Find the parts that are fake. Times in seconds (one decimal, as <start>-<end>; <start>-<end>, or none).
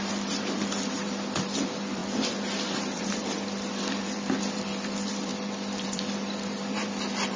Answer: 0.0-7.4